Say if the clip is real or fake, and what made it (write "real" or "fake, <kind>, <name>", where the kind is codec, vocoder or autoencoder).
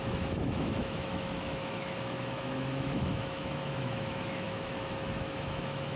fake, autoencoder, DAC-VAE